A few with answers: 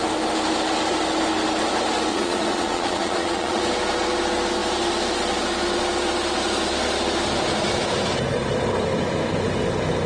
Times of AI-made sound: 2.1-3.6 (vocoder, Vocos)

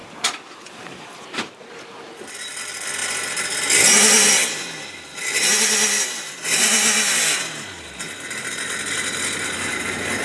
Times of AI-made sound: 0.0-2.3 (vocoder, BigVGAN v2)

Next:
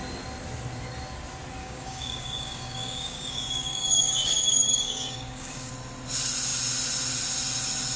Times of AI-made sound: 1.6-5.7 (codec, DAC)